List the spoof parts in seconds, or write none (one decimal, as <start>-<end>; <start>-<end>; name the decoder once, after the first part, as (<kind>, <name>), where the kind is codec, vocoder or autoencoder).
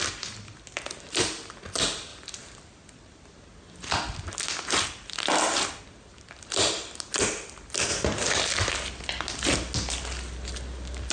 none